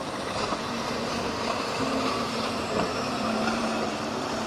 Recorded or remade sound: remade